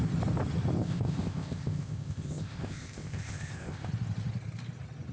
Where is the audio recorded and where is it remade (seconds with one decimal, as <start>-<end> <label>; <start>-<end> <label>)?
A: 0.0-0.8 recorded; 0.8-3.9 remade; 3.9-5.1 recorded